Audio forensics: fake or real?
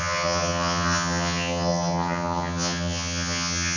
fake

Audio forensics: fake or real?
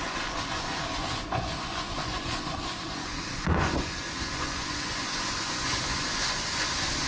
fake